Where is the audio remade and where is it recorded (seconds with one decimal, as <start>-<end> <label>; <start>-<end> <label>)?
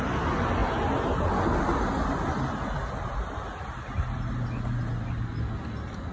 0.0-6.1 recorded